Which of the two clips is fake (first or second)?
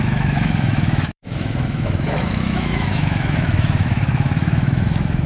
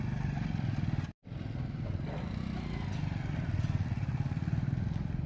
first